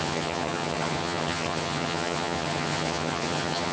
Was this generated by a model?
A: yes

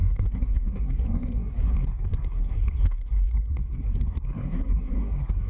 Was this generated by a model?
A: yes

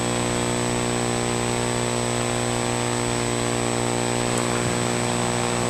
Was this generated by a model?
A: no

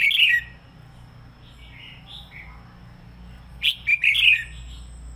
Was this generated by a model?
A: no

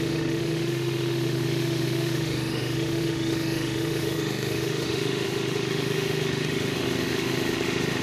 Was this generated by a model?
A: yes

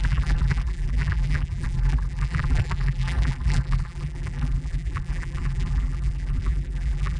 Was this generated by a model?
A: yes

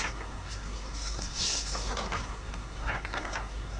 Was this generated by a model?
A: yes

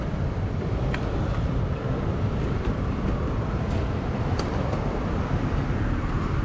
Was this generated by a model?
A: yes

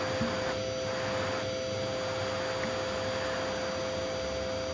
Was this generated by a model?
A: no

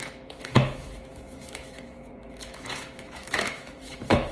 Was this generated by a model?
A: yes